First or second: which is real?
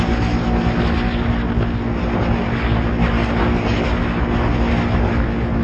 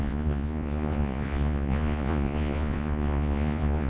first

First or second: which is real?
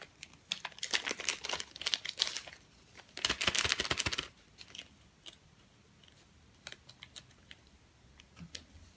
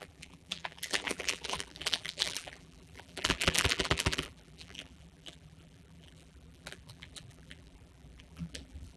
first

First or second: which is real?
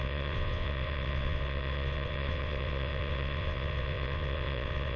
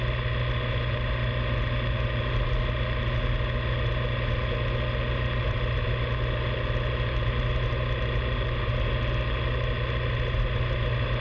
second